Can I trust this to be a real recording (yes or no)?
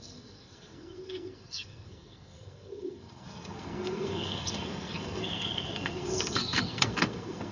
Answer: no